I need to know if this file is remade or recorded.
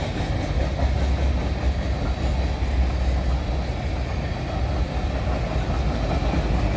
recorded